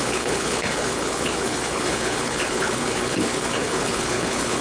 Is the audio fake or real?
fake